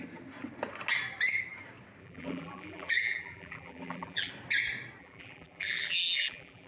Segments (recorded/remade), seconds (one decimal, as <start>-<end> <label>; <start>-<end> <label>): 0.0-2.0 recorded; 2.0-4.3 remade; 4.3-5.0 recorded; 5.0-6.7 remade